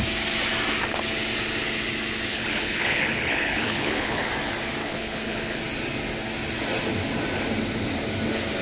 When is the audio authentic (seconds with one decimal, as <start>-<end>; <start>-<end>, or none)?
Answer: 0.0-2.3; 4.3-4.8; 5.6-8.6